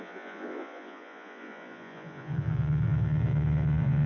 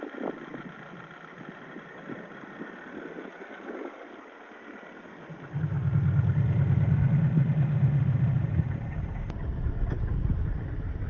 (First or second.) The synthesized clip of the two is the first